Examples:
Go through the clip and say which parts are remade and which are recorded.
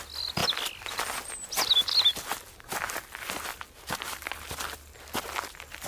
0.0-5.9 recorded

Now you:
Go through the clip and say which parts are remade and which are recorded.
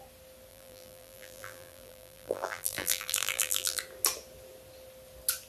0.0-0.5 recorded; 0.5-3.8 remade; 3.8-5.5 recorded